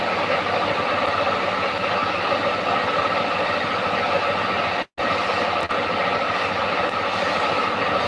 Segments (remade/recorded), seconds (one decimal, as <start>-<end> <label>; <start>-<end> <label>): 0.0-8.1 recorded